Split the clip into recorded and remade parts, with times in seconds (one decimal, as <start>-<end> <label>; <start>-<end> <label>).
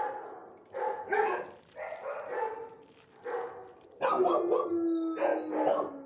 0.0-6.1 recorded